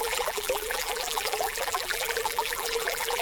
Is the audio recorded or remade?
remade